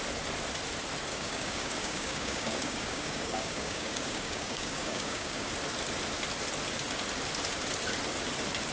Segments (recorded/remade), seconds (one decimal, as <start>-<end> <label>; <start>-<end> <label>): 0.0-1.1 recorded; 1.1-5.5 remade; 5.5-8.7 recorded